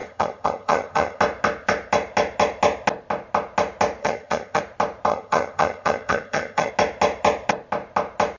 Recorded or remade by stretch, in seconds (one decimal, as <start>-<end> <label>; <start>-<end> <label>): 0.0-1.2 remade; 1.2-4.0 recorded; 4.0-4.6 remade; 4.6-5.1 recorded; 5.1-6.7 remade; 6.7-8.4 recorded